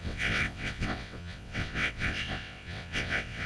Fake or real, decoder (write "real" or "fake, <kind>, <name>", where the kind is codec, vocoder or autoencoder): fake, vocoder, WaveNeXt